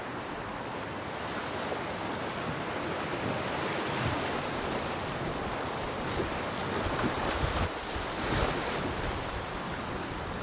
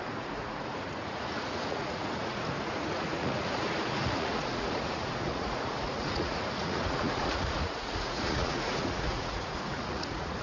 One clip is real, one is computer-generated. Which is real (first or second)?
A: first